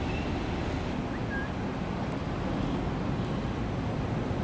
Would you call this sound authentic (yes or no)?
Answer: yes